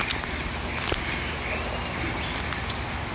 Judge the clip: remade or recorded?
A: recorded